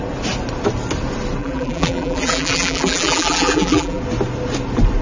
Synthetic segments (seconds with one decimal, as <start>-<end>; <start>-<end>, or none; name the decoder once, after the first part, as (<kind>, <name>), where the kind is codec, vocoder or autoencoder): 1.4-4.0 (vocoder, BigVGAN v2)